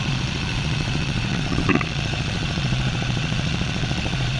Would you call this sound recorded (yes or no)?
no